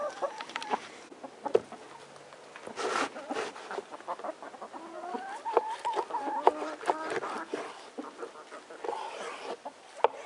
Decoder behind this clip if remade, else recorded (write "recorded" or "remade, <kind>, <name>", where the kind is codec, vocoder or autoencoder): recorded